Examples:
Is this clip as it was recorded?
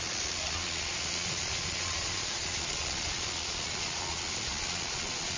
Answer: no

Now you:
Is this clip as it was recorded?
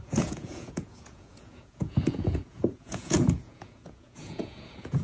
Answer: no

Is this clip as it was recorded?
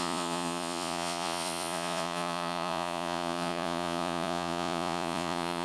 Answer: no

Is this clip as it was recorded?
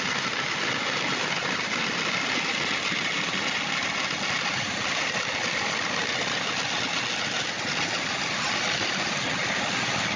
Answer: yes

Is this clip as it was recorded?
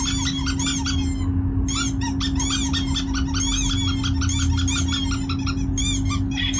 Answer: yes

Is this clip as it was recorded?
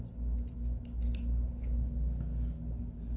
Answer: yes